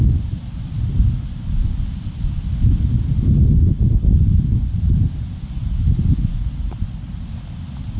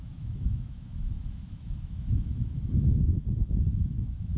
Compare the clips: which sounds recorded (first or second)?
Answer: first